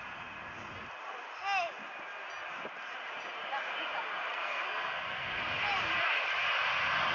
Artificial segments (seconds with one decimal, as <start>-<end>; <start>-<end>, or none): 4.3-5.4